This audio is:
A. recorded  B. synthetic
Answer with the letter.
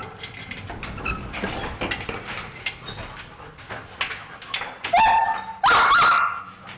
A